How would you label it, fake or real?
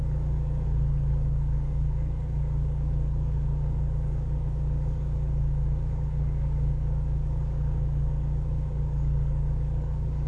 fake